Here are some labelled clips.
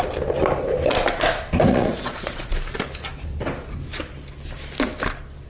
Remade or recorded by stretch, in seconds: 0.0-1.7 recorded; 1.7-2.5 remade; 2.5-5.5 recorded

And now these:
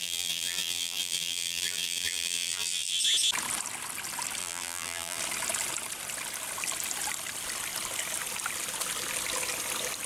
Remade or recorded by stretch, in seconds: 0.0-3.0 remade; 3.0-4.4 recorded; 4.4-5.2 remade; 5.2-10.1 recorded